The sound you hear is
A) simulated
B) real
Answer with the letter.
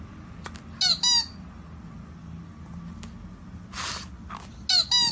B